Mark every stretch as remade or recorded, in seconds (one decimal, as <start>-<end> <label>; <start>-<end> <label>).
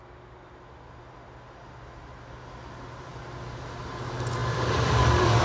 0.0-4.4 recorded; 4.4-5.4 remade